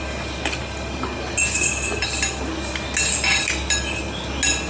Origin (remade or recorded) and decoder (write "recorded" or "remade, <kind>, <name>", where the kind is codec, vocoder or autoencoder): recorded